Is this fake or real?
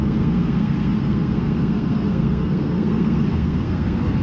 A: fake